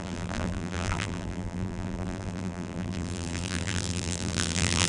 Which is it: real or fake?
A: fake